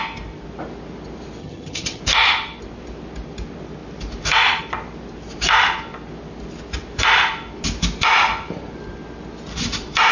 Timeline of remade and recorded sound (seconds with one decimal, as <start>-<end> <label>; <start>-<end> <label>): 0.0-1.4 recorded; 1.4-2.0 remade; 2.0-10.1 recorded